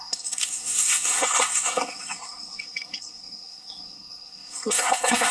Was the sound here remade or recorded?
remade